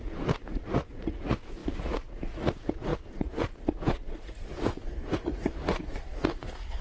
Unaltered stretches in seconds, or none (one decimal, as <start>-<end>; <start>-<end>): none